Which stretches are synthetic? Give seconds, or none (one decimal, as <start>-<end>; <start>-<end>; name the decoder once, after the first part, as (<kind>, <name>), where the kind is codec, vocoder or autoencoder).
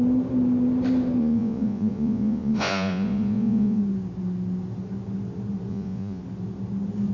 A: 1.2-3.8 (vocoder, Vocos); 5.7-6.2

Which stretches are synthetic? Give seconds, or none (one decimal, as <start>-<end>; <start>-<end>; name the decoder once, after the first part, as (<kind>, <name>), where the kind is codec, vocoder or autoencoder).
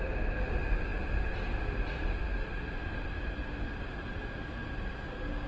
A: none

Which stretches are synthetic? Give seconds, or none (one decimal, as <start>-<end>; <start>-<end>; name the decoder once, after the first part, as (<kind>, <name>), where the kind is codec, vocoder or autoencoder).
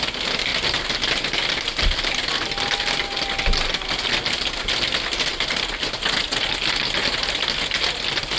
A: none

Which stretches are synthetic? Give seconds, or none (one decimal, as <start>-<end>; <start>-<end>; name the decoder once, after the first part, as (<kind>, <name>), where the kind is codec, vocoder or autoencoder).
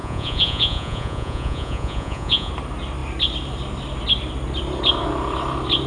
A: 0.0-2.5 (vocoder, Vocos)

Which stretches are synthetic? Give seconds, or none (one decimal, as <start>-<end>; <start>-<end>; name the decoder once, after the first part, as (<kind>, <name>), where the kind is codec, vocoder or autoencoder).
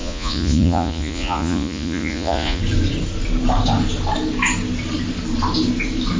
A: 0.0-2.6 (vocoder, Vocos)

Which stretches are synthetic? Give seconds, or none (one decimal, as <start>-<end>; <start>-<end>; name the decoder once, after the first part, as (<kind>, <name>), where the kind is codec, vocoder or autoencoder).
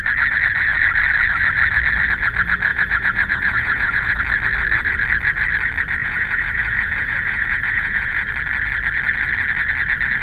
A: 2.7-4.2 (vocoder, Vocos); 6.0-8.3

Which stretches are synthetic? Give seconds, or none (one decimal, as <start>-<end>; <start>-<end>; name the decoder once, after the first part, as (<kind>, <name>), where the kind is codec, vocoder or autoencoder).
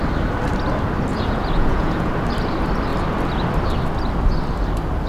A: 1.1-2.1 (vocoder, Vocos)